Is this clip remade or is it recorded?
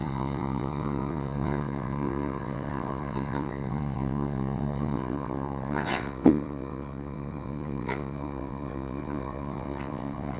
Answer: remade